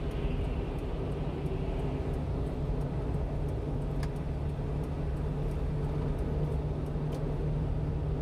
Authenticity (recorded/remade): recorded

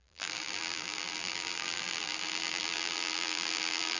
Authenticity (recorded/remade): remade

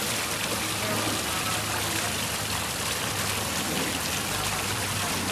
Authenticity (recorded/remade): recorded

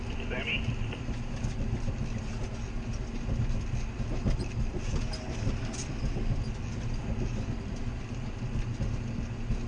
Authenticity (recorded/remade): recorded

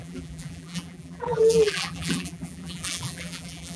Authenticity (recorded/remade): remade